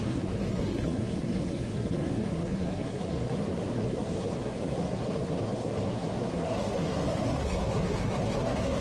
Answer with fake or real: fake